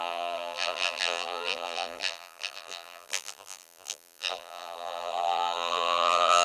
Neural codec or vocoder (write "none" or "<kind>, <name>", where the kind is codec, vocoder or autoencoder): vocoder, BigVGAN v2